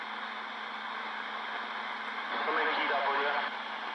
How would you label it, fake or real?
real